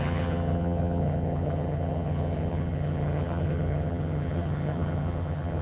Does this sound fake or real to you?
fake